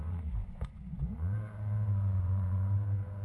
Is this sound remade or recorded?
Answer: remade